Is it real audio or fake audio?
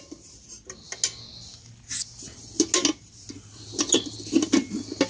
real